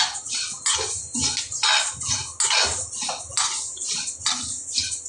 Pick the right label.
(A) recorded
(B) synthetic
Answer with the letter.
A